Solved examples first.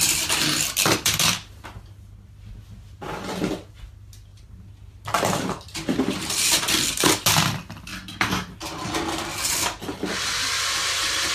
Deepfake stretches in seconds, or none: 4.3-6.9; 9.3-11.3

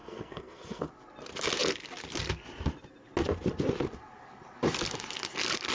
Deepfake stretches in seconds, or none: 0.0-0.9

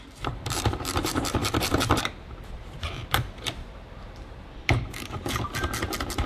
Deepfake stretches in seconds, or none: 0.0-6.3

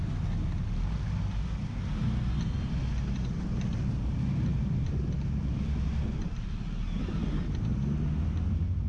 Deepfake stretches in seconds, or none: none

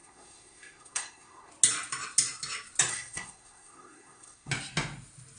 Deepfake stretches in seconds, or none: 0.0-1.5; 2.9-4.5

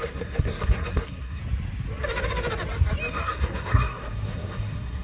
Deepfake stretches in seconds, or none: 0.0-1.4; 3.1-5.0

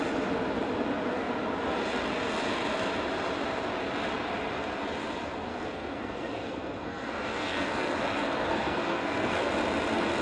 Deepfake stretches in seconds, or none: 5.5-9.5